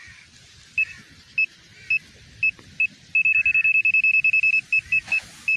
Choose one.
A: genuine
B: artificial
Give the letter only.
A